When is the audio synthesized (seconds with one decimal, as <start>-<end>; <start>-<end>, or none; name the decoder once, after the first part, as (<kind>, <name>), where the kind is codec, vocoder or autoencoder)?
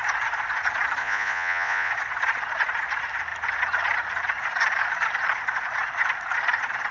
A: 1.0-1.9 (vocoder, Vocos)